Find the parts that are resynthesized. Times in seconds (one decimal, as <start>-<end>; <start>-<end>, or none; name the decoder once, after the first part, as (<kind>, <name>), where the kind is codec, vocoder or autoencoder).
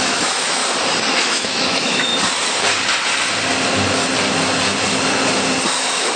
0.0-0.6 (autoencoder, DAC-VAE); 1.1-2.1; 5.8-6.2